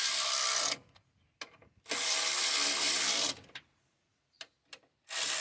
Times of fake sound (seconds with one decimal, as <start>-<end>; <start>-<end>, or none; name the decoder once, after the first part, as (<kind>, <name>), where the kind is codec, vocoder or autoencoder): none